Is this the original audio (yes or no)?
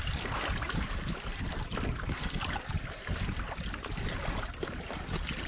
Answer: yes